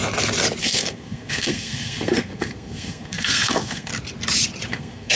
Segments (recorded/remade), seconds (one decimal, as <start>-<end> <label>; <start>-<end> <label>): 0.0-0.6 recorded; 0.6-3.9 remade; 3.9-4.7 recorded; 4.7-5.2 remade